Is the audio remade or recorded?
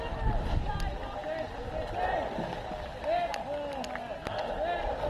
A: recorded